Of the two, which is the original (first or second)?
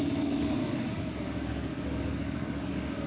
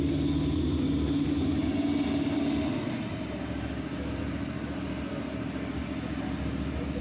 second